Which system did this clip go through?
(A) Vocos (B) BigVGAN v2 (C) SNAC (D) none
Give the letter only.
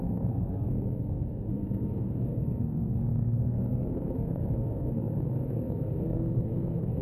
C